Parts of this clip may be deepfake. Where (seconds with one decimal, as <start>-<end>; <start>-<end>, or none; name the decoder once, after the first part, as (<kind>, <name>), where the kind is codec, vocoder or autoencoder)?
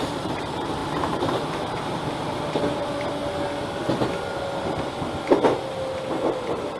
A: 0.0-3.2 (vocoder, BigVGAN v2); 6.1-6.8